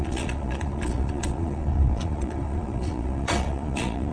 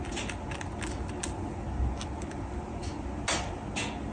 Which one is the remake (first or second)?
first